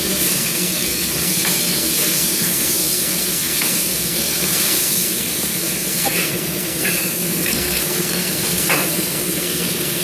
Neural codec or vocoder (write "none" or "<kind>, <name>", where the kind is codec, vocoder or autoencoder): codec, SNAC